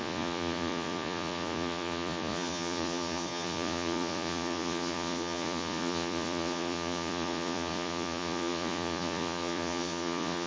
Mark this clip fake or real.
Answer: fake